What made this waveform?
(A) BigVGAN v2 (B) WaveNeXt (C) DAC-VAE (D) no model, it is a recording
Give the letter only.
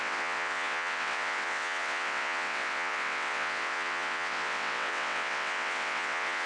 B